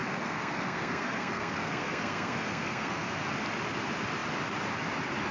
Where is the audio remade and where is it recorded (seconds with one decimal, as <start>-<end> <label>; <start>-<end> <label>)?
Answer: 0.0-3.2 remade; 3.2-5.3 recorded